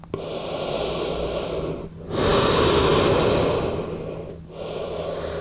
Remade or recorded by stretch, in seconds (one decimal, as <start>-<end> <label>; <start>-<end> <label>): 0.0-5.4 recorded